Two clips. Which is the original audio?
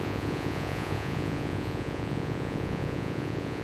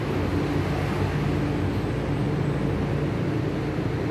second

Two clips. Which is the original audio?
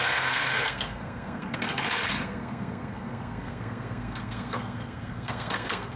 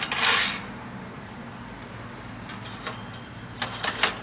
second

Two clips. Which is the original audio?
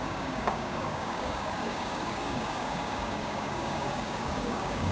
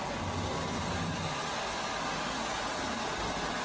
second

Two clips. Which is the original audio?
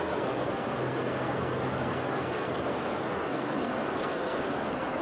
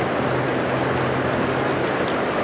second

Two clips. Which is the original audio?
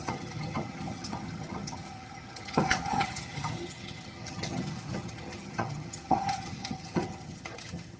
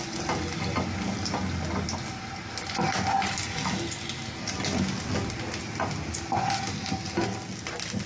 second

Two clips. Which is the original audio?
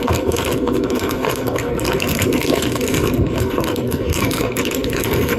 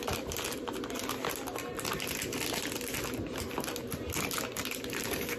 second